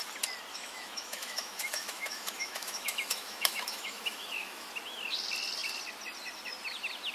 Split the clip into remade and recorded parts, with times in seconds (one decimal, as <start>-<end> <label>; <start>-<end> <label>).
0.0-0.5 recorded; 0.5-4.7 remade; 4.7-7.1 recorded